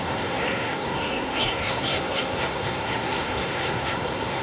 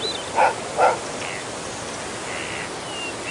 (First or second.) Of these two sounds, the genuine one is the second